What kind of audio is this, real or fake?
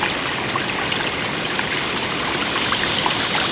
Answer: real